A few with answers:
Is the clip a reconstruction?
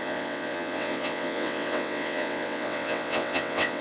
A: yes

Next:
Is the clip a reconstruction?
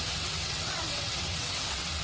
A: yes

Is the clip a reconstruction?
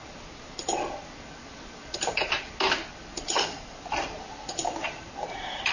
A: no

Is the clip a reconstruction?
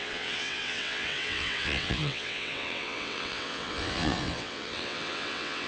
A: yes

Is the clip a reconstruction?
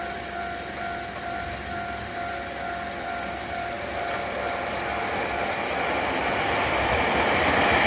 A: no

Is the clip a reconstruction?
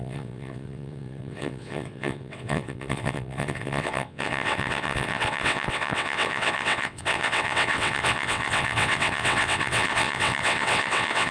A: yes